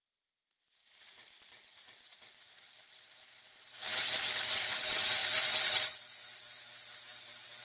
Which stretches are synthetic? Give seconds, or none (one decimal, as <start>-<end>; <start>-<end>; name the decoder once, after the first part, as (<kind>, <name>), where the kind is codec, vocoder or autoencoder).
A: 0.8-3.4 (vocoder, BigVGAN v2); 3.9-4.4; 5.2-5.9